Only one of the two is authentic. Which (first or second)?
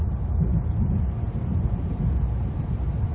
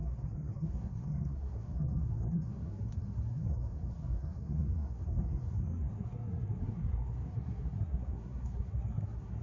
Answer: first